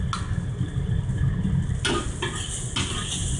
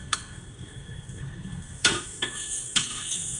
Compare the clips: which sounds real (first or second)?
first